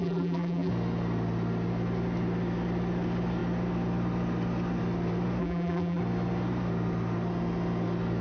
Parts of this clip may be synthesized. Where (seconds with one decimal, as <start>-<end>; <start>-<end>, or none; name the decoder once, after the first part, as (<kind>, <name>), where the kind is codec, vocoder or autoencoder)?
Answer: 0.0-0.7 (vocoder, BigVGAN v2); 5.4-6.0